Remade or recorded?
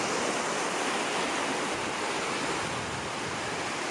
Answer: recorded